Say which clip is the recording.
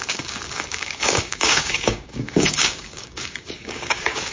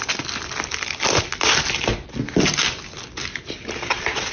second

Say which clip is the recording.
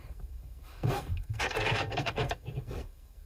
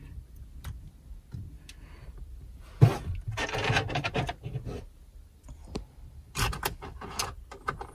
second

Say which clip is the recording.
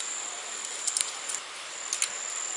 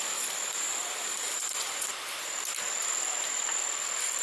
first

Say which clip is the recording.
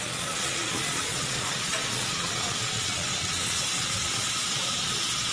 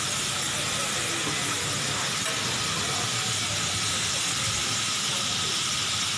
second